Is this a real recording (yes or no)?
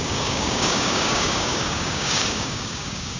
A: no